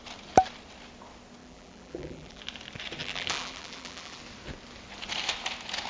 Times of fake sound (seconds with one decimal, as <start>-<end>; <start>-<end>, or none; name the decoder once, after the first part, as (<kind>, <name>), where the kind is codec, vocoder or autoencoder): 1.4-2.4 (vocoder, BigVGAN v2); 3.0-4.2